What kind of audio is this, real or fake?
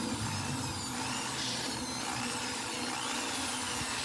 real